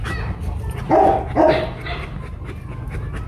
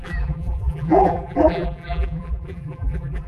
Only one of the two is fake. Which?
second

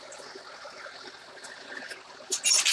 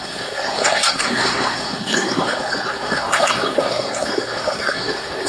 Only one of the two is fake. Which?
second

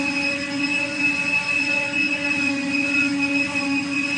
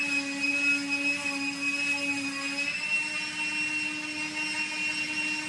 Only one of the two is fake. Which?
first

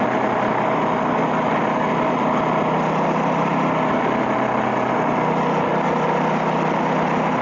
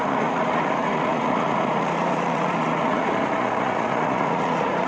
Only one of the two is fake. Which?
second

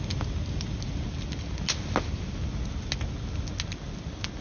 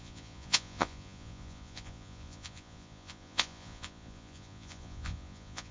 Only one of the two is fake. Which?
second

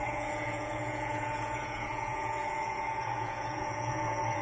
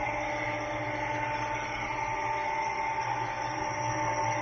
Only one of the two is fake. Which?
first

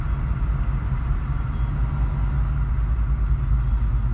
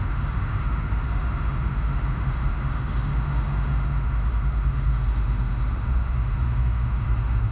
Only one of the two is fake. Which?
second